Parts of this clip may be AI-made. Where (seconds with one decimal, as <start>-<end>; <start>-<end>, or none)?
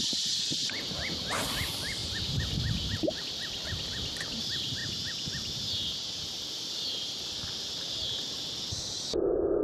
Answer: 0.0-2.0; 3.2-4.8; 6.1-9.6